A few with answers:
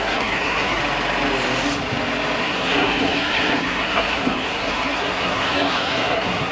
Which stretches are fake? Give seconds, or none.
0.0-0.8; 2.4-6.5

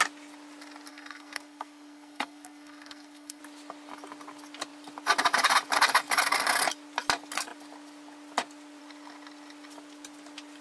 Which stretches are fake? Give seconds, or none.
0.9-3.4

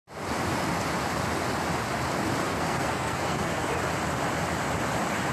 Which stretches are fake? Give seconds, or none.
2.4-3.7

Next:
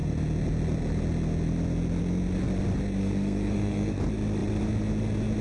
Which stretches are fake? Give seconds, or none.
3.0-4.0

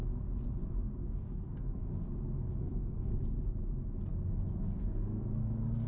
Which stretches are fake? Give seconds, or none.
1.0-1.9; 2.6-3.1; 4.8-5.9